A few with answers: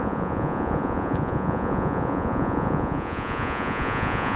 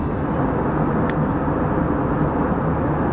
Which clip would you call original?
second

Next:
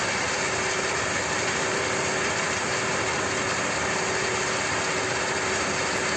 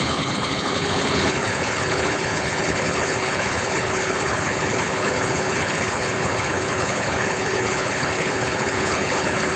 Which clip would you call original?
first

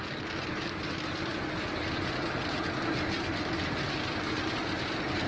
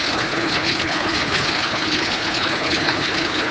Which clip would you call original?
first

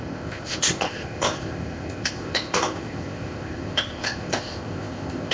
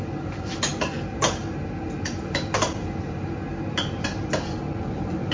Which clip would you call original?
second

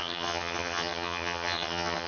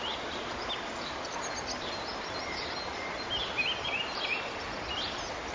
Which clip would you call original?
second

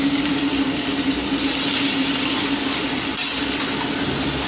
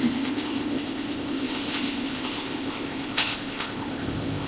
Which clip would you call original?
first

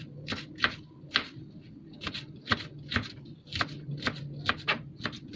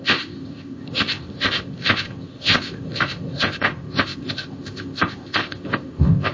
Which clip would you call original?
first